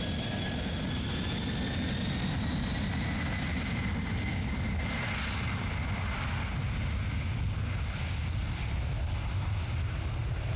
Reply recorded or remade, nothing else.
recorded